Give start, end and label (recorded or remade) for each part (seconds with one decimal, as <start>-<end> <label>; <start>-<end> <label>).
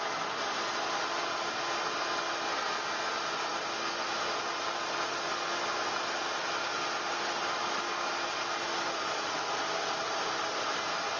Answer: 0.0-11.2 recorded